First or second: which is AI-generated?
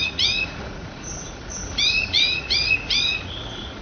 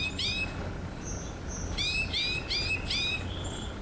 first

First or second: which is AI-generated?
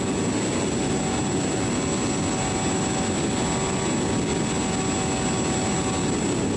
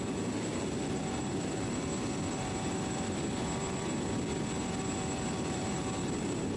second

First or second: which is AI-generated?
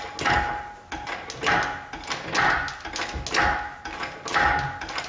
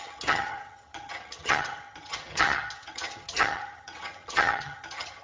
second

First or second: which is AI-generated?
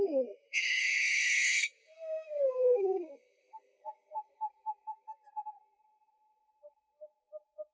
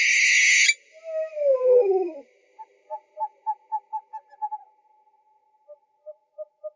first